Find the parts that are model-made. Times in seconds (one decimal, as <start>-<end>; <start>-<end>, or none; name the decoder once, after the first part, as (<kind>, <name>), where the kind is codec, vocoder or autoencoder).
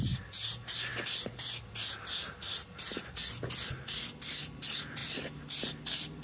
none